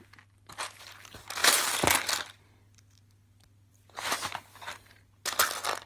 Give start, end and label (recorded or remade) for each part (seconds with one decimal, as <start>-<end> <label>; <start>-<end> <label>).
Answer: 0.0-5.9 recorded